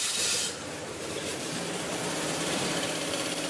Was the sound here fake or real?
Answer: fake